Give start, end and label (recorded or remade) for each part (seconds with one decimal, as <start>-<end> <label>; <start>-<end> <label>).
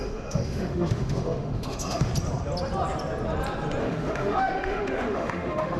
0.0-2.1 remade; 2.1-3.8 recorded; 3.8-5.8 remade